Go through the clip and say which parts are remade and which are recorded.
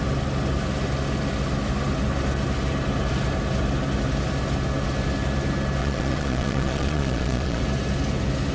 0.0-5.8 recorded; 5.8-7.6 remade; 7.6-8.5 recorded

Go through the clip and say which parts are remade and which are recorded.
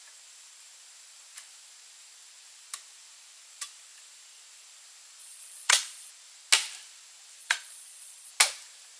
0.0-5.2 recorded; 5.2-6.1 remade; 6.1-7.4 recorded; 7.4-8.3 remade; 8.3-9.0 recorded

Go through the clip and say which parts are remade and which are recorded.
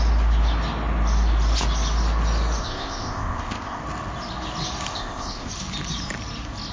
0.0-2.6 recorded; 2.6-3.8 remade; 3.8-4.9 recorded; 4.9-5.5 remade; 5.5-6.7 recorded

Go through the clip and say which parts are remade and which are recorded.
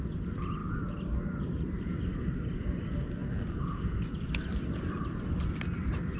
0.0-6.2 recorded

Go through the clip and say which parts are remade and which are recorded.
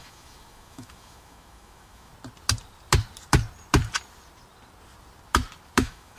0.0-2.1 remade; 2.1-5.8 recorded; 5.8-6.2 remade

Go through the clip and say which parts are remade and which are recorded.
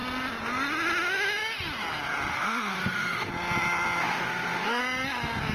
0.0-2.3 recorded; 2.3-3.3 remade; 3.3-4.0 recorded; 4.0-4.8 remade; 4.8-5.5 recorded